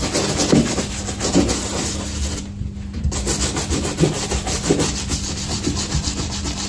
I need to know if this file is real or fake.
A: real